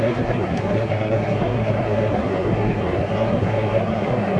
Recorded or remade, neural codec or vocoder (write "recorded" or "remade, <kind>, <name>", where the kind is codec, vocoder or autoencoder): remade, codec, SNAC